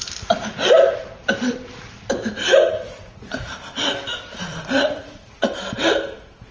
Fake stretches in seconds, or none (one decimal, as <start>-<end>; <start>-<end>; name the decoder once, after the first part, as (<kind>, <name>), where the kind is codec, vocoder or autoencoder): 2.6-3.5 (vocoder, Vocos); 4.3-5.5